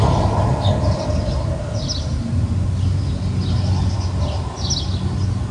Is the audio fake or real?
real